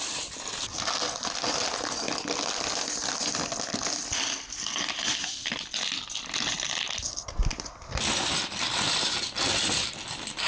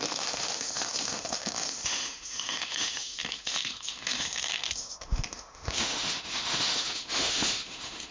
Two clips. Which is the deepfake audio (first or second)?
second